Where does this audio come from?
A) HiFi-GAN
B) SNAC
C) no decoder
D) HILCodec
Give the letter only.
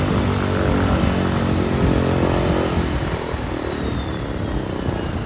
C